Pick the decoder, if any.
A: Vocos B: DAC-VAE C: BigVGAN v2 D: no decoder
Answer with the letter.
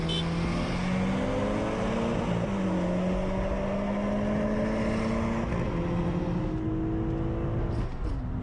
D